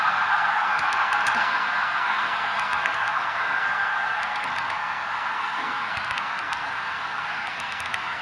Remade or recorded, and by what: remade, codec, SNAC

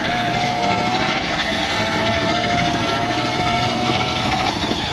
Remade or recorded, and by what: remade, codec, SNAC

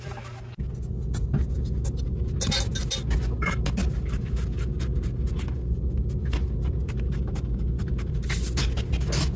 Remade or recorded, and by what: recorded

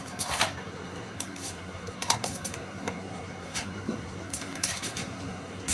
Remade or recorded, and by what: remade, codec, SNAC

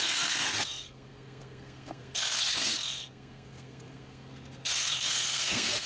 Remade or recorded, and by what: remade, codec, SNAC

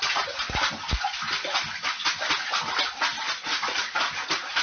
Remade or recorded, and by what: recorded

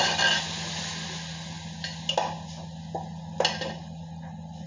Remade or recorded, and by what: recorded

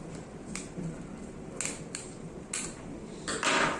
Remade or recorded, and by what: recorded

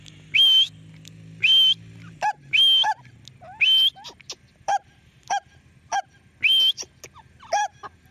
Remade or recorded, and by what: recorded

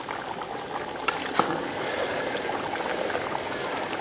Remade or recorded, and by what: recorded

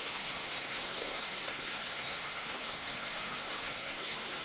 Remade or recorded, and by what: remade, codec, SNAC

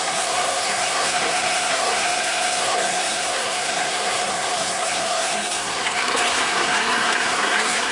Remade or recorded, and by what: remade, codec, SNAC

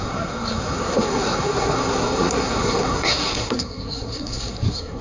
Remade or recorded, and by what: remade, codec, SNAC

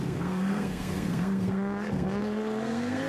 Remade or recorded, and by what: remade, codec, SNAC